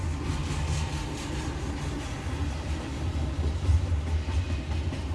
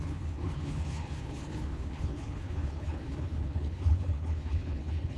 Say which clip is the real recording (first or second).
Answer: first